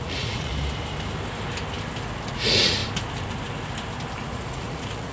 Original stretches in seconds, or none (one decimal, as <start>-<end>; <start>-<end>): 0.5-2.3; 2.8-4.2